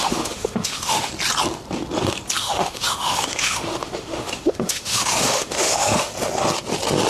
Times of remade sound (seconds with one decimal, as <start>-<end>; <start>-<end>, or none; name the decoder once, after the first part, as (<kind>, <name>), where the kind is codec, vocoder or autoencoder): 0.0-1.1 (autoencoder, DAC-VAE); 2.4-6.1

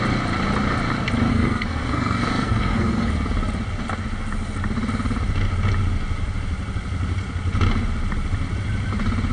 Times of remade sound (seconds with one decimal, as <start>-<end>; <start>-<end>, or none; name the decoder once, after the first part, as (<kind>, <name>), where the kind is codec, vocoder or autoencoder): 1.3-3.1 (codec, SNAC)

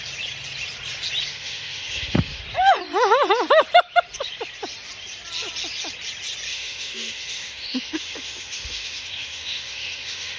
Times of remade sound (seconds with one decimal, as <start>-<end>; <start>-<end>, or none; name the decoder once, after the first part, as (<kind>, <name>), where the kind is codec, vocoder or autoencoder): 1.3-2.4 (autoencoder, DAC-VAE); 6.5-10.4

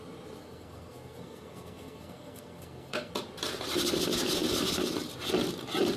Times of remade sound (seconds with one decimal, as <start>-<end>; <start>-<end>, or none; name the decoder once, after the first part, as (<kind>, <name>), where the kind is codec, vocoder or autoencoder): 0.4-3.1 (codec, SNAC)

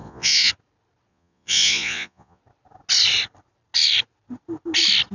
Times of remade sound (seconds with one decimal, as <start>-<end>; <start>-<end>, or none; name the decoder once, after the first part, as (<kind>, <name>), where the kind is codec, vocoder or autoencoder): 0.0-0.5 (vocoder, Vocos); 1.1-2.4

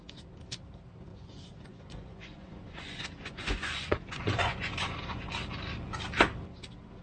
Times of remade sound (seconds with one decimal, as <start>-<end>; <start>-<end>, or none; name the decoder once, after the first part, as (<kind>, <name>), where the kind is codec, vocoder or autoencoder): 1.1-5.3 (vocoder, Vocos)

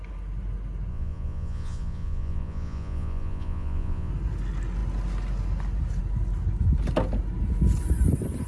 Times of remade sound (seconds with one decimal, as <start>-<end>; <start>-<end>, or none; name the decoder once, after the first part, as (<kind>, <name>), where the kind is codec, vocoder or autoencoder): 0.9-4.1 (vocoder, Vocos)

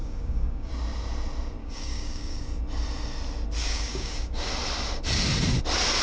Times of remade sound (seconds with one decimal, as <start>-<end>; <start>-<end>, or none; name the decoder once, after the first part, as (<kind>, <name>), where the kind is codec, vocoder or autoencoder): 0.0-0.7 (codec, DAC); 1.6-2.4; 3.6-4.5